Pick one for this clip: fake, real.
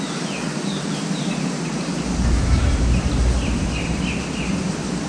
real